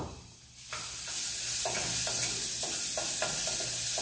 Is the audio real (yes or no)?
yes